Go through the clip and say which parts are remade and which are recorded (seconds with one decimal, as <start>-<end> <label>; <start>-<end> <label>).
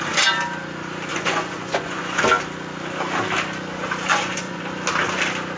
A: 0.0-1.1 recorded; 1.1-2.2 remade; 2.2-4.1 recorded; 4.1-4.6 remade; 4.6-5.6 recorded